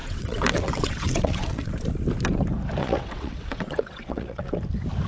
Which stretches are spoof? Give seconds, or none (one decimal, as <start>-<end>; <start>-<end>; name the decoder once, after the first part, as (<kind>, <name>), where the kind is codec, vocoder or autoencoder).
0.0-1.7 (vocoder, WaveNeXt); 2.8-4.6